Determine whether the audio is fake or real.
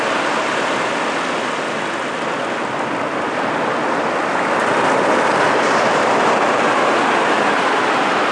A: real